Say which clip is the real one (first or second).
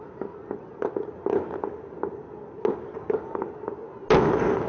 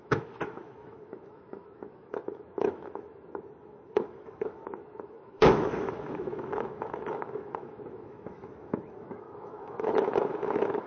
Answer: first